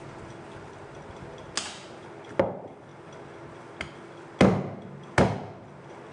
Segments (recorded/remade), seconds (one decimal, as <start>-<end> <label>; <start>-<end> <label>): 0.0-6.1 recorded